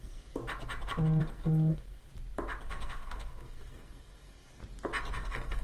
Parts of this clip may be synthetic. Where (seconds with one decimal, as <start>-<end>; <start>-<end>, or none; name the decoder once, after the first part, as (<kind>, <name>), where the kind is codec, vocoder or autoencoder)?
0.0-0.4 (codec, SNAC); 1.2-2.1; 2.6-4.6; 5.1-5.6